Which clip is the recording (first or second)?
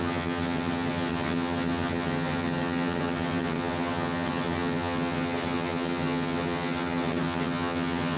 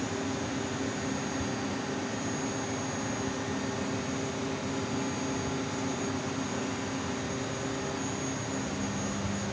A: second